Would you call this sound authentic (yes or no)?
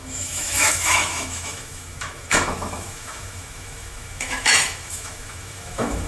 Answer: no